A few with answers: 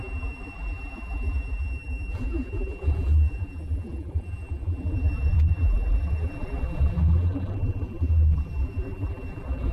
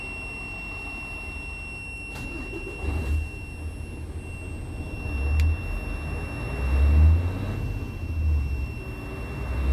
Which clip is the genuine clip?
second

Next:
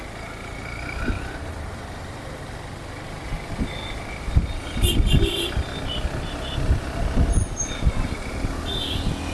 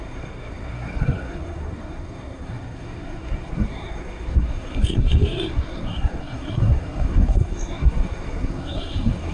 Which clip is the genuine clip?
first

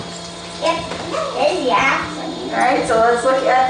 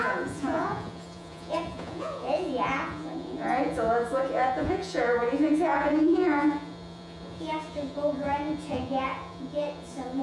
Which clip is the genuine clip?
first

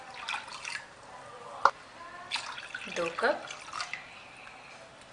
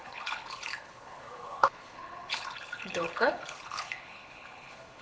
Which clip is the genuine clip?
first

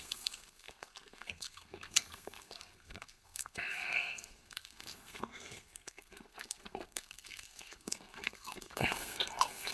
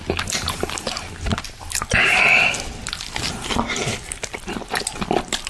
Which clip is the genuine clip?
second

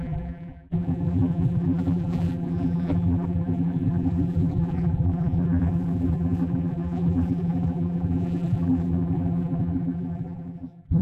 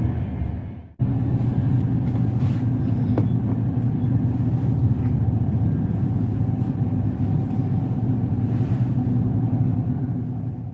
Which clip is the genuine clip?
second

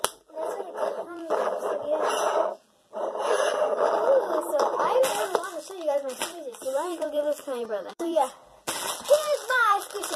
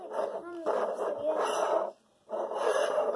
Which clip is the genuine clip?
second